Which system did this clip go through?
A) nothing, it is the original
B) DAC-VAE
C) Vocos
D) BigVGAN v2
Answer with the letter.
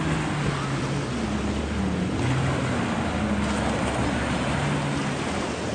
A